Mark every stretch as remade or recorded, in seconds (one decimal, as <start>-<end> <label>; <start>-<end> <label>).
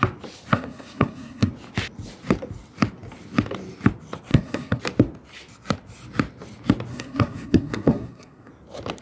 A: 0.0-0.5 recorded; 0.5-1.5 remade; 1.5-4.3 recorded; 4.3-4.8 remade; 4.8-6.9 recorded; 6.9-8.5 remade; 8.5-9.0 recorded